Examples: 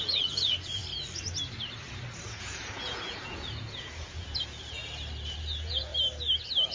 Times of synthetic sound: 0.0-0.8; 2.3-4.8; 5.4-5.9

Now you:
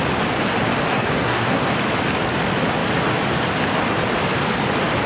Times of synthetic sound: 0.9-1.7

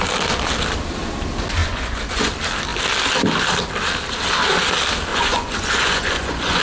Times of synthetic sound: 1.6-2.3; 5.1-6.6

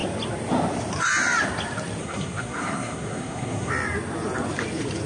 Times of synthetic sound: 2.0-3.7